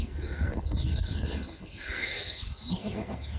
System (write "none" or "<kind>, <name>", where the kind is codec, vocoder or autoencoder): codec, SNAC